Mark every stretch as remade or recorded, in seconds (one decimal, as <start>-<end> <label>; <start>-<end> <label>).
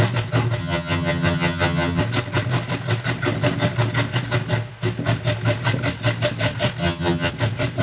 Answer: 0.0-0.6 recorded; 0.6-2.0 remade; 2.0-6.8 recorded; 6.8-7.3 remade; 7.3-7.8 recorded